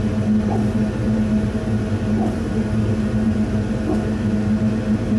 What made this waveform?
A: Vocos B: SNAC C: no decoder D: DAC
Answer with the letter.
C